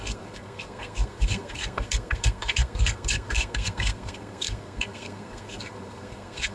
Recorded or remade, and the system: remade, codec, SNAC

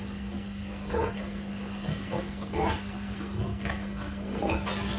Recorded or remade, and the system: remade, codec, SNAC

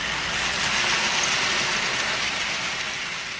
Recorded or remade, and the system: recorded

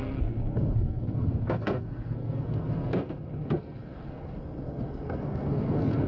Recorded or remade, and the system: remade, codec, SNAC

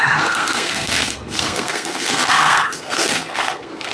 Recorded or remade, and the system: remade, codec, SNAC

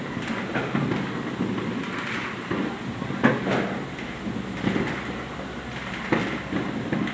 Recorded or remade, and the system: recorded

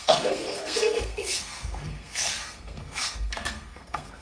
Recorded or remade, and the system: remade, codec, SNAC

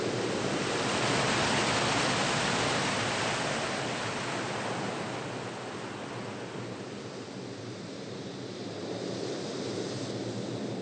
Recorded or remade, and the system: recorded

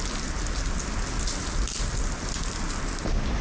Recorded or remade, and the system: recorded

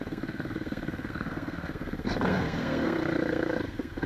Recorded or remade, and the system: remade, codec, SNAC